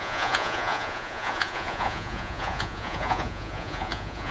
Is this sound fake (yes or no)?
yes